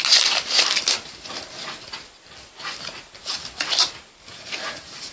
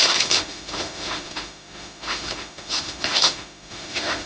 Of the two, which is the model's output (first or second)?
second